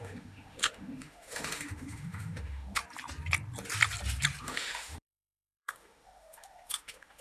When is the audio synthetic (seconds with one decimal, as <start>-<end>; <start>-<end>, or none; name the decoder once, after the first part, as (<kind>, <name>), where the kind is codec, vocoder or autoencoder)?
0.0-2.8 (autoencoder, DAC-VAE); 4.4-7.2